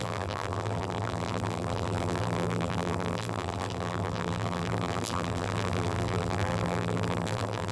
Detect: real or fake fake